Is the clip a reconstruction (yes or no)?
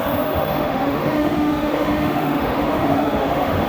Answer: yes